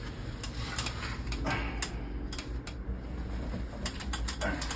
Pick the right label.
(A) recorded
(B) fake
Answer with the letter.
A